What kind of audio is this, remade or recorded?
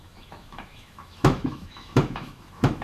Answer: remade